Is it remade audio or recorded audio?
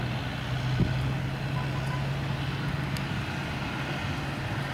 recorded